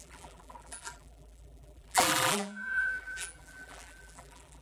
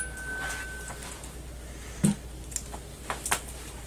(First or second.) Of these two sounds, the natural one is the second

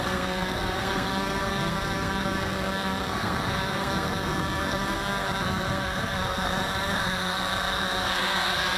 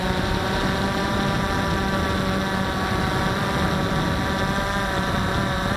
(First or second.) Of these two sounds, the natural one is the second